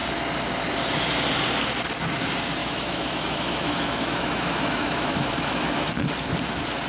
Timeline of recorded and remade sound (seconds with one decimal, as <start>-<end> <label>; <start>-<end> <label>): 0.0-2.6 recorded; 2.6-5.9 remade; 5.9-6.9 recorded